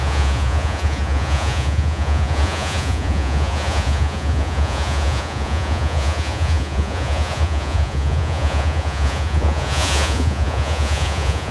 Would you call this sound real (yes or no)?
no